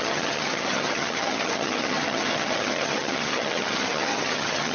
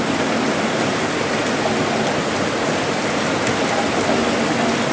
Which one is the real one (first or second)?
second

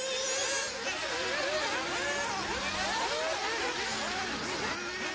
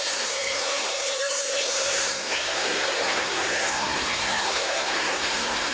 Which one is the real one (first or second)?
first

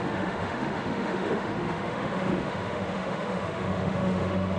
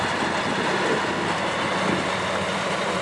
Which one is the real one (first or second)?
second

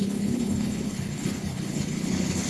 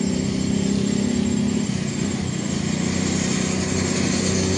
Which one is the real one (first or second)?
second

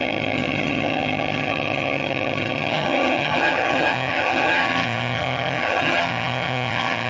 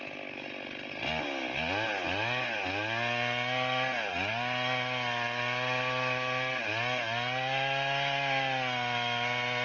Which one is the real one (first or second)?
second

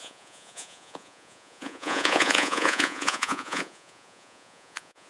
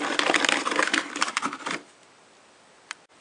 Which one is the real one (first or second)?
second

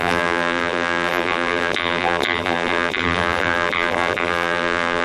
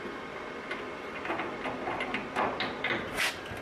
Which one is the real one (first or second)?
second